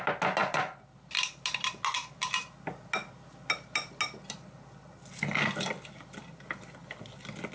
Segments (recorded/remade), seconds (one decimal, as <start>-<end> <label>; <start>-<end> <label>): 0.0-7.5 recorded